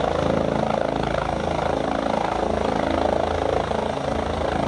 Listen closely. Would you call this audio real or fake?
real